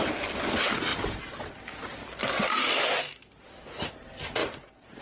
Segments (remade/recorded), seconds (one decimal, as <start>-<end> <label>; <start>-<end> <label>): 0.0-4.4 recorded; 4.4-5.0 remade